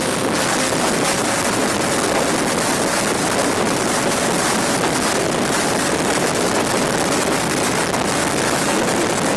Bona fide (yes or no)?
yes